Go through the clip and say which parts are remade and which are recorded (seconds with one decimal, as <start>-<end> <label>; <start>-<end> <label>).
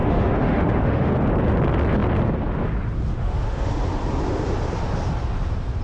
0.0-1.1 remade; 1.1-3.1 recorded; 3.1-3.7 remade; 3.7-5.8 recorded